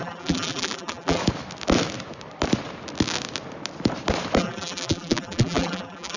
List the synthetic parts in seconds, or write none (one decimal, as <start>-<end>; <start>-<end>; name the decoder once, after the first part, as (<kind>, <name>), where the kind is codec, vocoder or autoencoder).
0.0-1.2 (vocoder, BigVGAN v2); 4.4-6.2